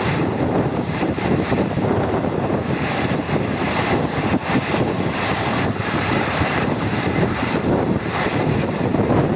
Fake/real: fake